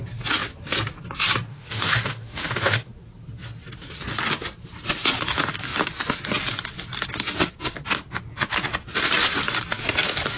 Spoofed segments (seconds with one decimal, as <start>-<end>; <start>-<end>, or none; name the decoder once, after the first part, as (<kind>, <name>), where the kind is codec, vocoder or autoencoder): 1.5-2.9 (autoencoder, DAC-VAE)

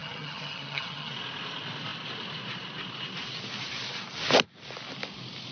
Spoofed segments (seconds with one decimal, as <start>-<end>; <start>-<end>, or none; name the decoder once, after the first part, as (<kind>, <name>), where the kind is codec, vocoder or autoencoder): 0.0-1.1 (vocoder, HiFi-GAN)

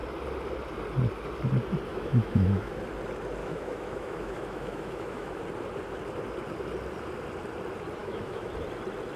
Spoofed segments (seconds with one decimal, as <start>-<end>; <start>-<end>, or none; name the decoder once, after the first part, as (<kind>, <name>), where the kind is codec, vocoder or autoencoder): 1.9-2.7 (autoencoder, DAC-VAE); 3.4-5.4; 8.0-8.5

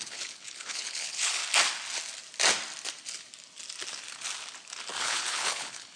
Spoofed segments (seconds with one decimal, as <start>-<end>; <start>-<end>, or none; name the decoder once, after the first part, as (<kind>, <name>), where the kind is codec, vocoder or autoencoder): 0.0-1.4 (codec, HILCodec); 5.0-6.0

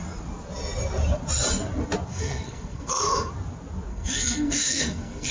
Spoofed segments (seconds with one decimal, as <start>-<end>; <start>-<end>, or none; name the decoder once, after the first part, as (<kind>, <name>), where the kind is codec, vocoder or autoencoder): 2.1-3.3 (codec, SNAC); 3.9-5.3

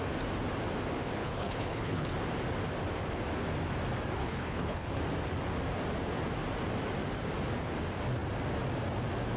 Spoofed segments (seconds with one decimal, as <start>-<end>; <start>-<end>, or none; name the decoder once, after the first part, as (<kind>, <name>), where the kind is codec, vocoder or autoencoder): 1.2-2.1 (codec, HILCodec); 4.2-5.0